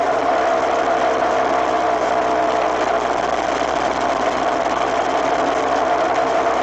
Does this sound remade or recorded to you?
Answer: recorded